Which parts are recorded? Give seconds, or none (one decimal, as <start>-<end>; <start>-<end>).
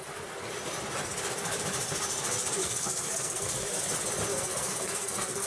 0.0-2.6; 3.8-4.3